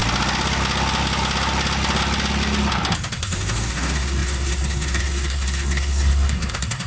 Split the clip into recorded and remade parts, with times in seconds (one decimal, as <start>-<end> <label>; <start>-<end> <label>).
0.0-3.1 recorded; 3.1-6.9 remade